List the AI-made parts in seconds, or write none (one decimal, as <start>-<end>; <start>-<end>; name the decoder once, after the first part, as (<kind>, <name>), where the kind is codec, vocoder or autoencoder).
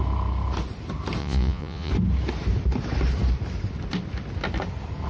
1.2-1.9 (vocoder, Vocos)